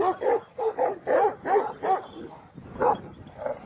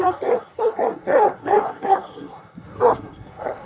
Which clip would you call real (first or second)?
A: first